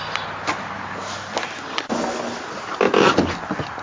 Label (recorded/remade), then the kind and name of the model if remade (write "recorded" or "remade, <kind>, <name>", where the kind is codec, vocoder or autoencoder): recorded